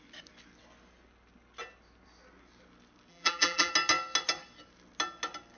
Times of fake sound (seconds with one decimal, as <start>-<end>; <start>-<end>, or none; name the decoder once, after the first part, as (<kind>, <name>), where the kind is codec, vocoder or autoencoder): 3.1-3.7 (vocoder, BigVGAN v2)